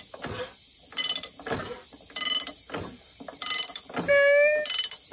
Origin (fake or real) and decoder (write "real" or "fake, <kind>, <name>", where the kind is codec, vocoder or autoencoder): real